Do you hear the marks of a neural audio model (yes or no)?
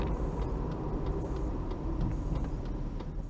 no